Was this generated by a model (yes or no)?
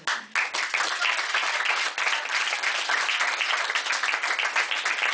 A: no